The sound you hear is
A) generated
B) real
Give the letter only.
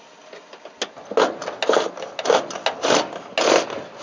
B